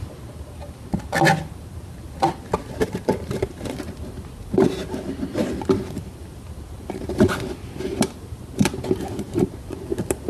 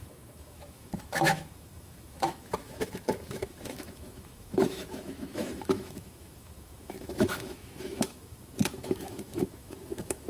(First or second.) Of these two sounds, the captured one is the first